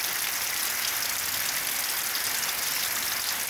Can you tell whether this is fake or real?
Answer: real